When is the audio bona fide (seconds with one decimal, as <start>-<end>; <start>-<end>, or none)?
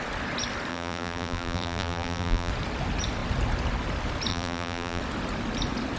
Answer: 0.0-0.7; 2.5-4.3; 5.0-6.0